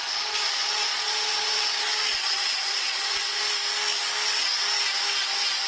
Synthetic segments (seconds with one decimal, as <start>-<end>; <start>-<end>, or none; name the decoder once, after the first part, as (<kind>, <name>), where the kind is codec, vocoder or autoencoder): 0.0-3.4 (vocoder, Vocos)